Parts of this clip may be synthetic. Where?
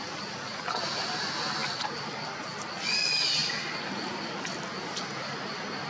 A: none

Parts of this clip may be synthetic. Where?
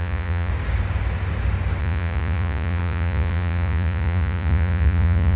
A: 0.0-0.5 (vocoder, Vocos); 1.8-5.4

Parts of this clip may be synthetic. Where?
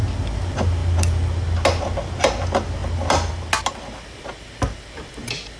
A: none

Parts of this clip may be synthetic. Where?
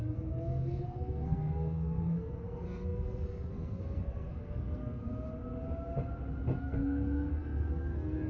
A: 0.0-5.0 (codec, SNAC); 6.6-8.3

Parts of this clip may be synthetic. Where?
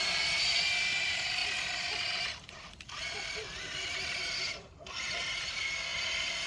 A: none